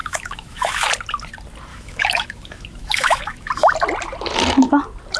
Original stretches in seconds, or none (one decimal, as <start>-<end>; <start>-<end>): 0.9-1.7; 3.5-5.2